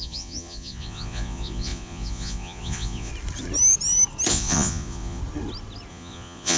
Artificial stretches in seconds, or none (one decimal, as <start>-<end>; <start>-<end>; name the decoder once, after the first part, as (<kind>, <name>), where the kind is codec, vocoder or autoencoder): 0.0-3.1 (vocoder, Vocos); 4.3-5.2; 5.9-6.6